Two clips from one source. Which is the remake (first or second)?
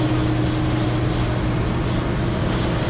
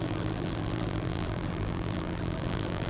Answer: second